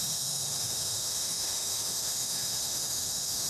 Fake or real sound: fake